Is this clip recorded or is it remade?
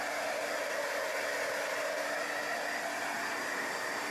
recorded